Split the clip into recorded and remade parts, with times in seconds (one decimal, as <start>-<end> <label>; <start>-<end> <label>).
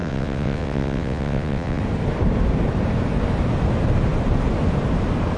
0.0-1.8 remade; 1.8-5.4 recorded